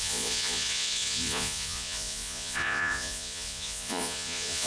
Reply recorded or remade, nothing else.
remade